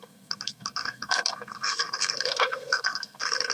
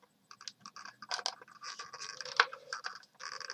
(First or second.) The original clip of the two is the second